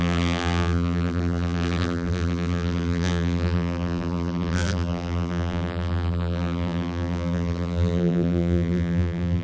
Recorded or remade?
remade